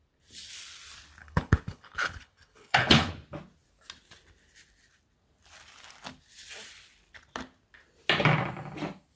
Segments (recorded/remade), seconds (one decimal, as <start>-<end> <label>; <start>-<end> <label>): 0.0-1.2 recorded; 1.2-3.1 remade; 3.1-9.2 recorded